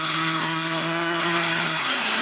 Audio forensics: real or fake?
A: fake